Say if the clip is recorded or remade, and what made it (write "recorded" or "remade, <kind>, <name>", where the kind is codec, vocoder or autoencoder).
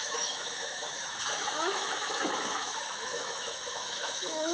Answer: remade, autoencoder, DAC-VAE